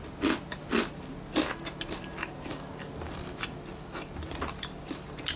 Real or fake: real